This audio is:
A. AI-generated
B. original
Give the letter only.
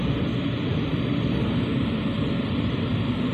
A